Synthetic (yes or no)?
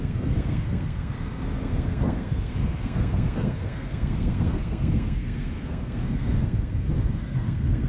yes